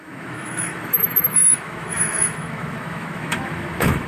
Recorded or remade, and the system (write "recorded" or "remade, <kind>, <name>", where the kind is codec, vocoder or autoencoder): remade, autoencoder, DAC-VAE